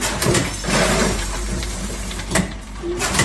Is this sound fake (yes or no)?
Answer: yes